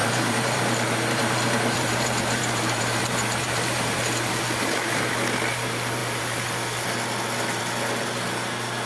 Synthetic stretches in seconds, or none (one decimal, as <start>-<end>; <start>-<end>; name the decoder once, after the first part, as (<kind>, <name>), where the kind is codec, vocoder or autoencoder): 0.0-4.4 (vocoder, BigVGAN v2)